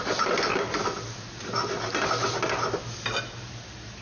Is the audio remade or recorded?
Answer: recorded